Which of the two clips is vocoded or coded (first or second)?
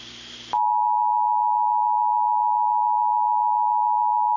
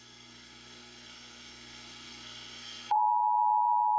second